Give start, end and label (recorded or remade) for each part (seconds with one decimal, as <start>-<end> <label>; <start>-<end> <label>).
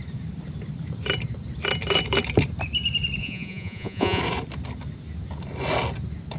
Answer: 0.0-3.2 recorded; 3.2-4.2 remade; 4.2-6.4 recorded